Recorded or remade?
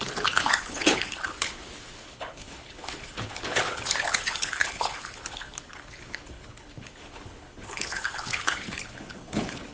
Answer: remade